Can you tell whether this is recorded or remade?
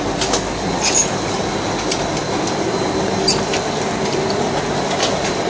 recorded